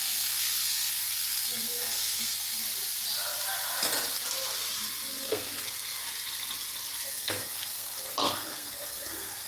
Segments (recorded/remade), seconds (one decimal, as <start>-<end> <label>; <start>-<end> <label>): 0.0-2.6 remade; 2.6-5.1 recorded; 5.1-6.0 remade; 6.0-7.1 recorded; 7.1-9.5 remade